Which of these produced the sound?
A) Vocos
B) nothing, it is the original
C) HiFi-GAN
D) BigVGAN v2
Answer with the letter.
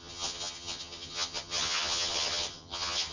C